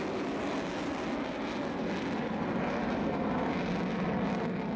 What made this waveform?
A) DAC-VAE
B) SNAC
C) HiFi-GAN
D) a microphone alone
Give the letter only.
D